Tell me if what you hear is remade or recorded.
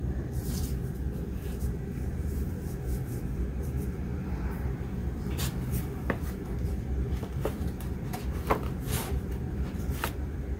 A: remade